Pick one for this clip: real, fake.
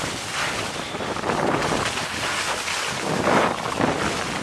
real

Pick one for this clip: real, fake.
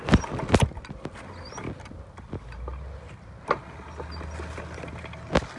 real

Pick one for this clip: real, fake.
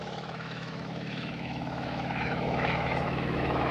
fake